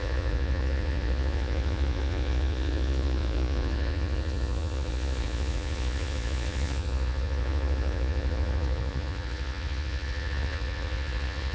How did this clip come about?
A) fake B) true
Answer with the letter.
A